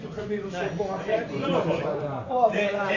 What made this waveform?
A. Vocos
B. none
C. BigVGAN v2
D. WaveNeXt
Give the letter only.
A